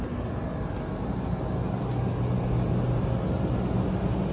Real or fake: real